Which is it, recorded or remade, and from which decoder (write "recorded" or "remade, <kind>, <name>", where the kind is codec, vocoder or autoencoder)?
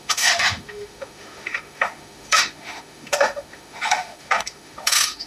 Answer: remade, autoencoder, DAC-VAE